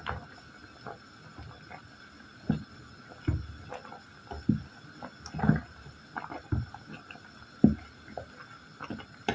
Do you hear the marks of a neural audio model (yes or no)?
no